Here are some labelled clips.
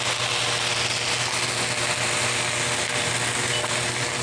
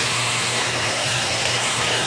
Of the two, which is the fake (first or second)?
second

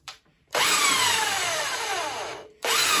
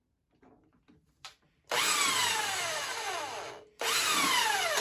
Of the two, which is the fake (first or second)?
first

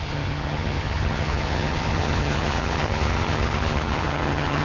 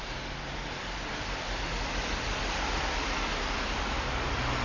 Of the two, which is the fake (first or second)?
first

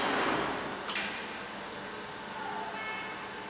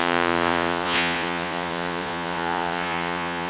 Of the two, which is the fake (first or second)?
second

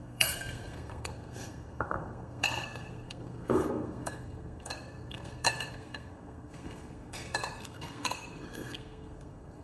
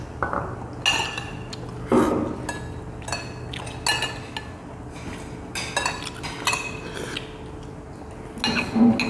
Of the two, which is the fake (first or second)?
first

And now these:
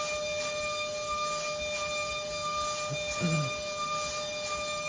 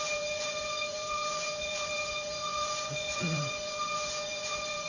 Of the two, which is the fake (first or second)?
second